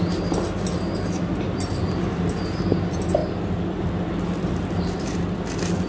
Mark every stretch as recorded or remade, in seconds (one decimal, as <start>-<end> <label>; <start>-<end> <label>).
0.0-5.9 recorded